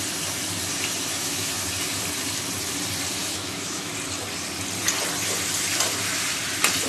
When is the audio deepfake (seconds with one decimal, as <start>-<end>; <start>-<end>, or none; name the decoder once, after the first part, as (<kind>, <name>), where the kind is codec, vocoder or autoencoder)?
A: 1.2-1.7 (autoencoder, DAC-VAE); 3.2-3.9